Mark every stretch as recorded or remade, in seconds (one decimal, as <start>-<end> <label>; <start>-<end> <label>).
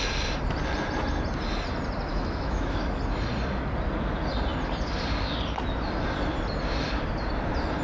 0.0-2.1 recorded; 2.1-3.0 remade; 3.0-7.8 recorded